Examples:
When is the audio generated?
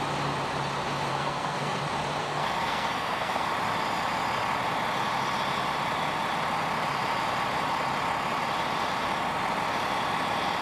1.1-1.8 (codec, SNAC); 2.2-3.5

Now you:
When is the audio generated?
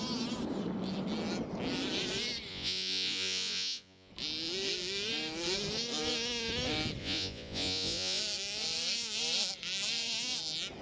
2.5-4.1 (vocoder, Vocos); 7.0-8.2